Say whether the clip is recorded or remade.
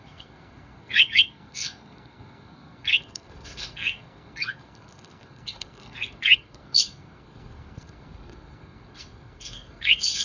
remade